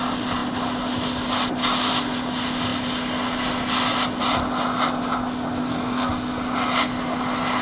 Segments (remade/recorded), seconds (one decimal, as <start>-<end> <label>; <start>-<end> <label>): 0.0-5.6 recorded; 5.6-6.1 remade; 6.1-7.6 recorded